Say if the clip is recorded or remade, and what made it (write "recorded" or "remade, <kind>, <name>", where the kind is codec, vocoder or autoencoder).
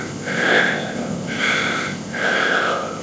remade, codec, ZipCodec